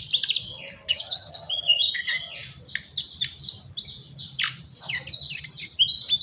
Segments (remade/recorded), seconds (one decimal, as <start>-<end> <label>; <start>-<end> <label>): 0.0-0.9 recorded; 0.9-1.9 remade; 1.9-6.2 recorded